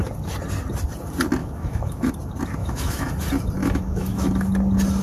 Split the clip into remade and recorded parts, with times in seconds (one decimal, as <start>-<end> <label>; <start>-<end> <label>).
0.0-1.4 recorded; 1.4-2.1 remade; 2.1-2.6 recorded; 2.6-3.1 remade; 3.1-3.6 recorded; 3.6-4.3 remade; 4.3-5.0 recorded